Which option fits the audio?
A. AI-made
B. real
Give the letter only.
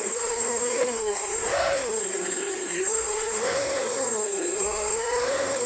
A